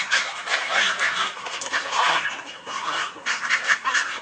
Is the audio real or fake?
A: fake